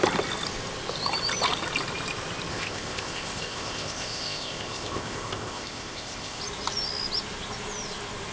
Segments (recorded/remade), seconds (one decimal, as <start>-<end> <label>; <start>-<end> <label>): 0.0-2.5 recorded; 2.5-6.4 remade; 6.4-8.3 recorded